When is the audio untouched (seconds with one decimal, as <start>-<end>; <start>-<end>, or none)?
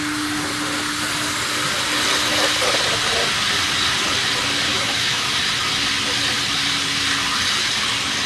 0.0-4.7; 5.4-8.3